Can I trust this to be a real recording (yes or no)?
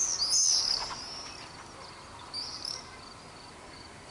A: yes